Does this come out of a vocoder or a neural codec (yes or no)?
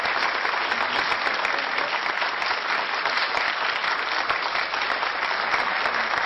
no